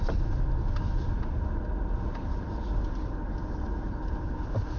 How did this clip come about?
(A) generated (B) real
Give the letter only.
B